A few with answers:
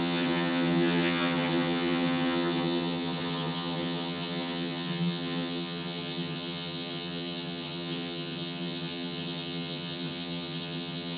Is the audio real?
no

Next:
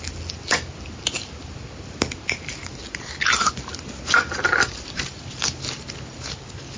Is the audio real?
yes